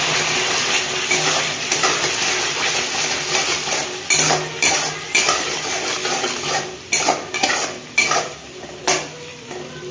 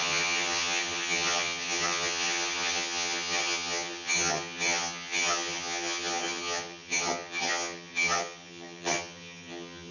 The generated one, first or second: second